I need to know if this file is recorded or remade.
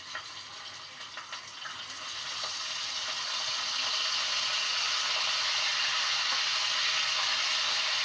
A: recorded